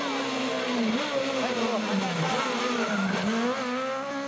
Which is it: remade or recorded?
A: recorded